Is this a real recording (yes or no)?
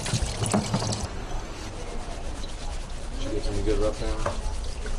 yes